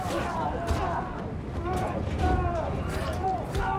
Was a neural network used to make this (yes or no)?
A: no